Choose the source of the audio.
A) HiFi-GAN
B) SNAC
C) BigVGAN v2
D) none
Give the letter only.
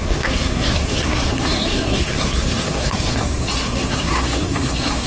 B